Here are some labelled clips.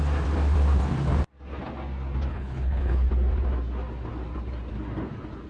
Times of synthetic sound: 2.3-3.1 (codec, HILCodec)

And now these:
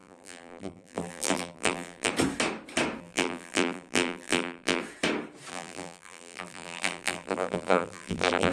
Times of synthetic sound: 0.0-2.1 (vocoder, BigVGAN v2); 3.0-4.8; 5.5-8.5

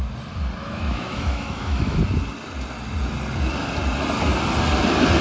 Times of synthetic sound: 0.6-2.0 (autoencoder, DAC-VAE)

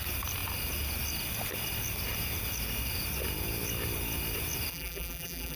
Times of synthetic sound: 4.7-5.6 (vocoder, BigVGAN v2)

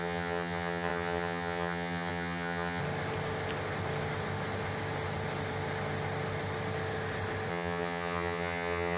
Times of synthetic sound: 0.0-2.8 (vocoder, HiFi-GAN); 7.5-9.0

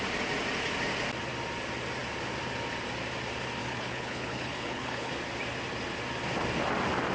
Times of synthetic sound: 3.6-5.1 (codec, HILCodec)

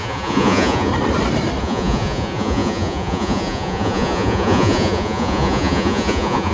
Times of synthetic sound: 0.0-0.9 (vocoder, Vocos); 1.6-6.5

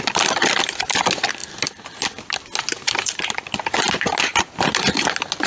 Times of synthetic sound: none